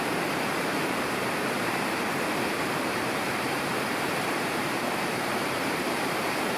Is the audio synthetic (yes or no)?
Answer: yes